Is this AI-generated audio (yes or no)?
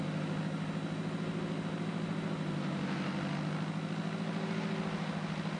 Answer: no